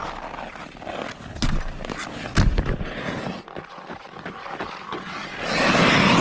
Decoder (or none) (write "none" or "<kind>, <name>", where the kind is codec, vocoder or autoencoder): none